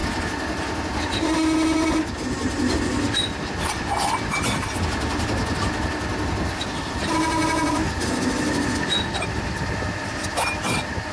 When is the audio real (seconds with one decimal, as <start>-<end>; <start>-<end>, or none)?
0.0-11.1